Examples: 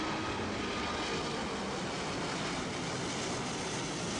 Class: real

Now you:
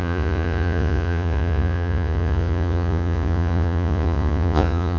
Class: fake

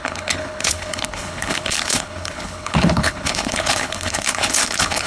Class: fake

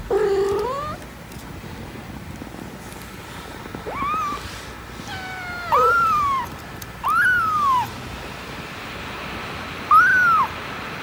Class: real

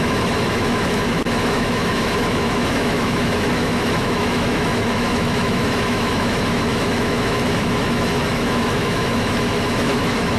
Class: fake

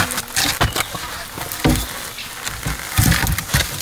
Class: real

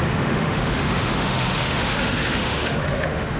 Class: fake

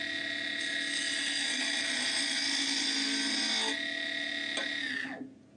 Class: real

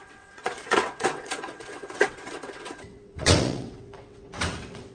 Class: fake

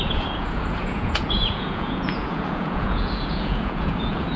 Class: fake